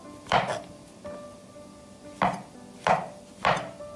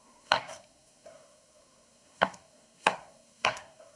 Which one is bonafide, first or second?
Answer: first